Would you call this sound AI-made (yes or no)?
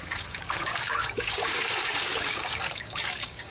yes